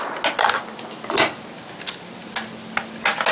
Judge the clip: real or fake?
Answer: real